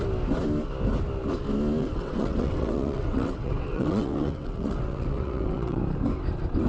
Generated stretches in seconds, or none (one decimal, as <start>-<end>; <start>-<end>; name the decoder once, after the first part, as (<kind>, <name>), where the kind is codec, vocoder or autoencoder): 1.8-5.8 (vocoder, WaveNeXt)